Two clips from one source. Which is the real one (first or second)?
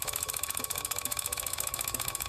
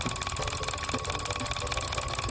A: second